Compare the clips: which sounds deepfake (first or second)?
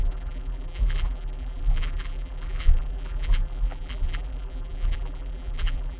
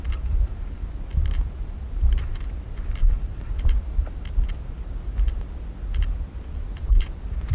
first